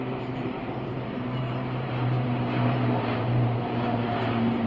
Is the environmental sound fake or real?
fake